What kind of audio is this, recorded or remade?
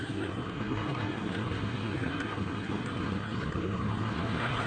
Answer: remade